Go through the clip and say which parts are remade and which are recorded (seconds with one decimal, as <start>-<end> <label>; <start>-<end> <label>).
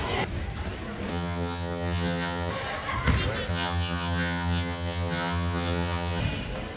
0.0-1.1 recorded; 1.1-2.5 remade; 2.5-3.5 recorded; 3.5-6.2 remade; 6.2-6.8 recorded